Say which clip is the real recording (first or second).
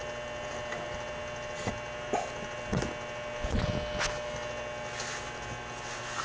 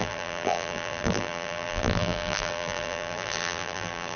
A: first